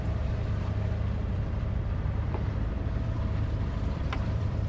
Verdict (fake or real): fake